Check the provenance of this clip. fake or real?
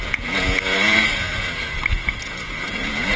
fake